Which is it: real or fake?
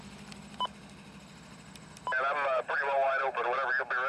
real